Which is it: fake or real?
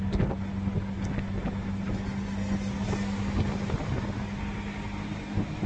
real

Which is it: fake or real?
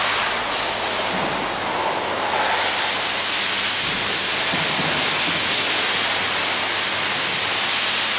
real